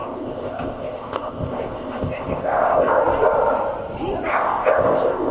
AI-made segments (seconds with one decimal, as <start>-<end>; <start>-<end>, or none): 0.0-3.0; 4.3-5.3